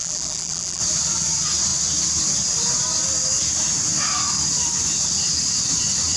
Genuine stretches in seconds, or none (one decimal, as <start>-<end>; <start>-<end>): 0.8-6.2